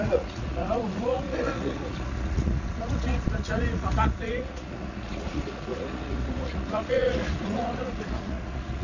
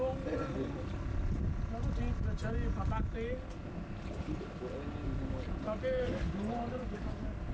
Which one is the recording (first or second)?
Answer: second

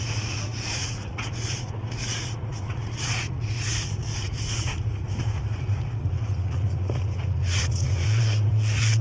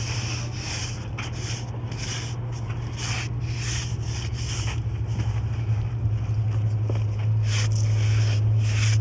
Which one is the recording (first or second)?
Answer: second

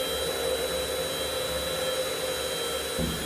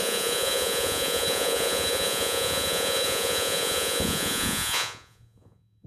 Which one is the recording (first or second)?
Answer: first